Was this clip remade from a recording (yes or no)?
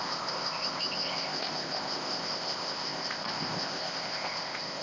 yes